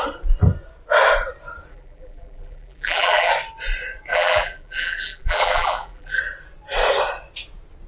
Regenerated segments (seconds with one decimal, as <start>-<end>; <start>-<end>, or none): 1.7-3.3; 4.1-6.2